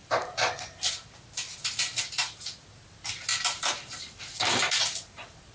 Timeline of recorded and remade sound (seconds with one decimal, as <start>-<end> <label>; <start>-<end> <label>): 0.0-0.5 remade; 0.5-1.9 recorded; 1.9-2.6 remade; 2.6-3.3 recorded; 3.3-4.8 remade; 4.8-5.5 recorded